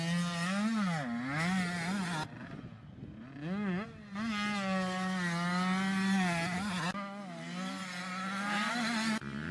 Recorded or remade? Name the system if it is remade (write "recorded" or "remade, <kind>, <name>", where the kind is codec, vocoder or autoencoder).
recorded